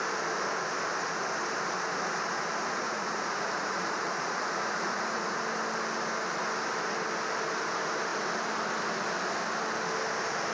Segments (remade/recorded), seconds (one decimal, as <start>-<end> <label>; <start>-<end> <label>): 0.0-2.6 recorded; 2.6-5.4 remade; 5.4-10.5 recorded